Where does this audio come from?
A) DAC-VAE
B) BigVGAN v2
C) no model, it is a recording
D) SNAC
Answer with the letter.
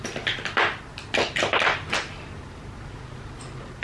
C